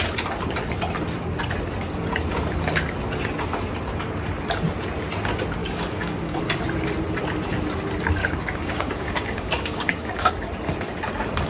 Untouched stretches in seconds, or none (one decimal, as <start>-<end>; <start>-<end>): 0.0-5.6; 6.4-8.2; 10.3-11.5